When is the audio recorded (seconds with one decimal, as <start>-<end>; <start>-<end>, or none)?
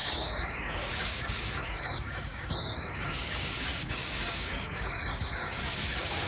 none